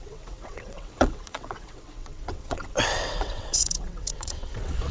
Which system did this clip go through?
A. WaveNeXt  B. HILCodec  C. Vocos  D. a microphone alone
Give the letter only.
A